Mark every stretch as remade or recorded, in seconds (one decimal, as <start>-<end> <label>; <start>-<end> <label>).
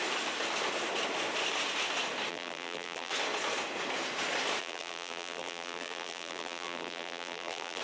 0.0-2.3 recorded; 2.3-3.1 remade; 3.1-4.6 recorded; 4.6-7.8 remade